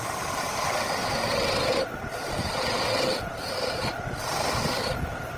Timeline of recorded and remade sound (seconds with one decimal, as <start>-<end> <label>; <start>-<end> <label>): 0.0-1.0 remade; 1.0-3.2 recorded; 3.2-5.4 remade